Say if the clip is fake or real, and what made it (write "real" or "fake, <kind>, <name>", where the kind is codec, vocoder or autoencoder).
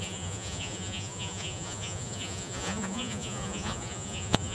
fake, vocoder, Vocos